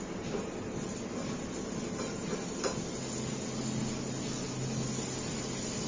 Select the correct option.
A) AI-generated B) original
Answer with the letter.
B